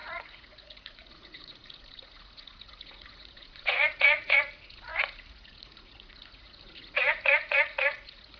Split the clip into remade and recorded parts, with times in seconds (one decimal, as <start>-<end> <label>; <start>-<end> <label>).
0.0-8.4 remade